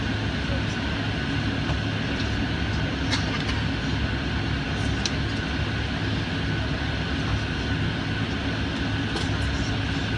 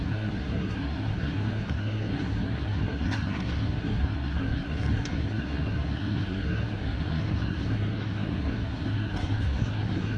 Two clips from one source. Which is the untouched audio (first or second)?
first